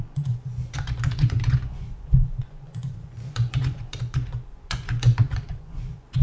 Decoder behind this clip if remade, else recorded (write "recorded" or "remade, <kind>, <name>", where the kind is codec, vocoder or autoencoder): remade, vocoder, Vocos